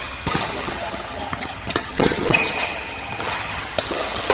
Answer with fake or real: fake